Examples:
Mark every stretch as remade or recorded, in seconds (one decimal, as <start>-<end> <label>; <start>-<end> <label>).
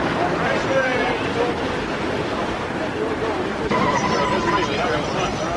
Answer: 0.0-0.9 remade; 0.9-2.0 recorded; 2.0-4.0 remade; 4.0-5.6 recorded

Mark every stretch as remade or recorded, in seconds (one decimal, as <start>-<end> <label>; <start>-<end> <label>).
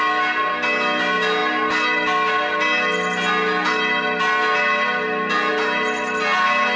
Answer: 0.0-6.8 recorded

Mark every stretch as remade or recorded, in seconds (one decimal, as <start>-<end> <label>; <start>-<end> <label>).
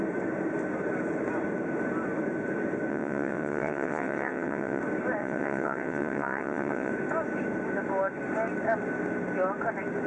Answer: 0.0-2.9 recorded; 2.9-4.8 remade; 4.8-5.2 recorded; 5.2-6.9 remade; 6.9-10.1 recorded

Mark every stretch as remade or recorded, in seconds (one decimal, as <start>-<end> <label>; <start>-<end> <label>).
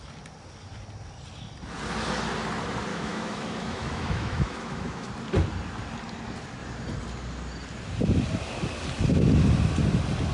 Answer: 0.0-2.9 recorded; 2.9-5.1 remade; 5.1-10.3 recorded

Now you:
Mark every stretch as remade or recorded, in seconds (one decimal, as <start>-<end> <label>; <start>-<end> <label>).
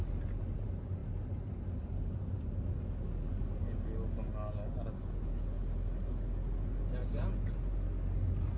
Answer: 0.0-8.6 recorded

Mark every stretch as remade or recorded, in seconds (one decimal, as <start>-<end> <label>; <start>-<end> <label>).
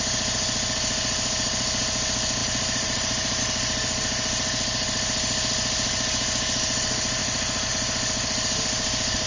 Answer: 0.0-2.4 recorded; 2.4-3.4 remade; 3.4-7.2 recorded; 7.2-7.7 remade; 7.7-9.3 recorded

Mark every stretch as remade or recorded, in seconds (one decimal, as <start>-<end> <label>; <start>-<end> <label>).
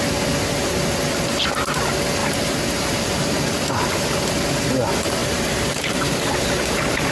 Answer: 0.0-2.2 recorded; 2.2-3.0 remade; 3.0-5.2 recorded; 5.2-6.3 remade; 6.3-7.1 recorded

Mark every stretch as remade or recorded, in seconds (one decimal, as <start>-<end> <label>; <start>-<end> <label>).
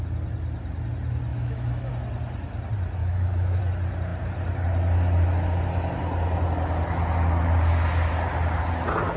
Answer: 0.0-1.3 recorded; 1.3-1.9 remade; 1.9-3.0 recorded; 3.0-3.6 remade; 3.6-9.2 recorded